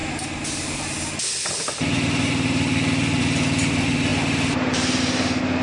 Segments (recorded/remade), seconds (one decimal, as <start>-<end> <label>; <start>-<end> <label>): 0.0-5.6 recorded